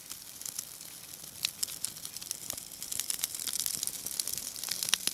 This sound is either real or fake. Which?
fake